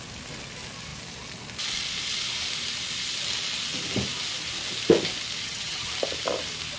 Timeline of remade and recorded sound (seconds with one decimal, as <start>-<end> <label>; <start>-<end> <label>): 0.0-5.4 recorded; 5.4-5.9 remade; 5.9-6.8 recorded